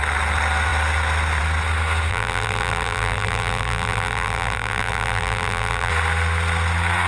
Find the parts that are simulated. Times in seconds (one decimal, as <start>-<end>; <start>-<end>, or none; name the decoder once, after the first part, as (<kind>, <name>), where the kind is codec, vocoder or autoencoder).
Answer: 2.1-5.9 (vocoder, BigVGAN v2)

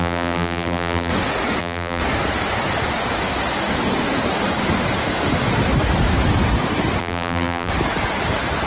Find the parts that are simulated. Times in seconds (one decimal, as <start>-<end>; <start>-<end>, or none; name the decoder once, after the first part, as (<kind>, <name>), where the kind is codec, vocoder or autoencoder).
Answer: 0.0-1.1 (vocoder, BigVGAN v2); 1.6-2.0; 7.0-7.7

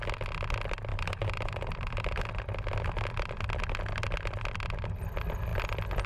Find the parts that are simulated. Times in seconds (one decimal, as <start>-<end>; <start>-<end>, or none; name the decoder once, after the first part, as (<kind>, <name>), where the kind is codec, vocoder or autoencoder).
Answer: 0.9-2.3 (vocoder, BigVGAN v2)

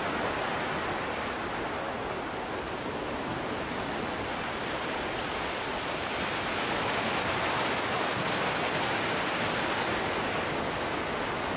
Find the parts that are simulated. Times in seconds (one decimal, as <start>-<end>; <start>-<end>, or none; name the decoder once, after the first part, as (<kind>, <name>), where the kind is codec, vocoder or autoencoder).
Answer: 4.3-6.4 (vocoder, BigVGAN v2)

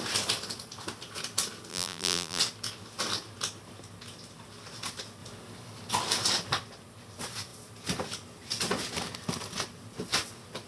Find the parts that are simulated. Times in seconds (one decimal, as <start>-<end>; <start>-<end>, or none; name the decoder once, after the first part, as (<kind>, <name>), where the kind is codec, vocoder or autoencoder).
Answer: 1.7-2.4 (vocoder, BigVGAN v2)

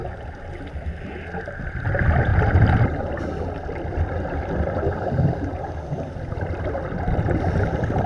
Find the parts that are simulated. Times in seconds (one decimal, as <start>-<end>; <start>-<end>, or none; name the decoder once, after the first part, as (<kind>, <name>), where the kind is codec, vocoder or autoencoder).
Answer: 3.9-6.4 (vocoder, BigVGAN v2)

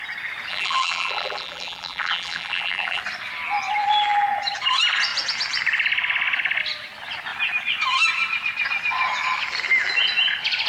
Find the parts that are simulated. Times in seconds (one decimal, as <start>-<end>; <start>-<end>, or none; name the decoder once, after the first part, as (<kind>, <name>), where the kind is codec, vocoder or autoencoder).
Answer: 0.5-3.0 (vocoder, BigVGAN v2)

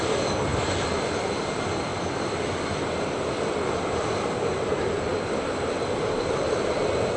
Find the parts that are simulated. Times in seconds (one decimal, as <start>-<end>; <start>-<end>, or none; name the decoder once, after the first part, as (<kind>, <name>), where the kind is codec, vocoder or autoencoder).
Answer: 0.5-1.4 (vocoder, BigVGAN v2); 1.9-6.2